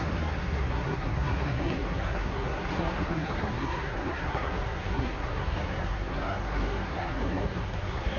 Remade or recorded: remade